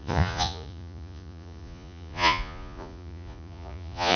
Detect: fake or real fake